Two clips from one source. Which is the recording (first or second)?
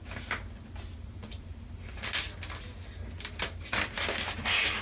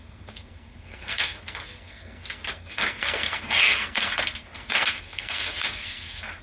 first